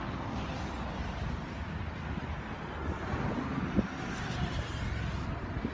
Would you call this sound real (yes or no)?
yes